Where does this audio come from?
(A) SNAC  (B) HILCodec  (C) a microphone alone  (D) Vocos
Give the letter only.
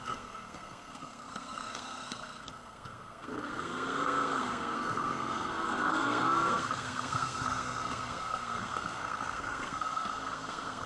A